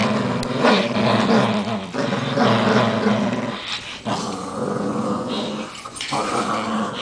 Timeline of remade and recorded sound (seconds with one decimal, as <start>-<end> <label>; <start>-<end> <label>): 0.0-4.2 recorded; 4.2-7.0 remade